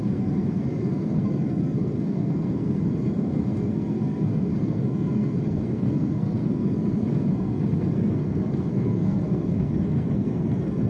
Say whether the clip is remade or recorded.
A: remade